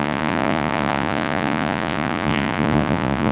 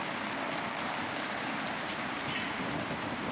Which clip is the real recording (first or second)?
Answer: second